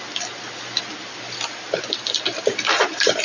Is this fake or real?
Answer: fake